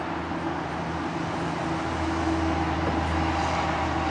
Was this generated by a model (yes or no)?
no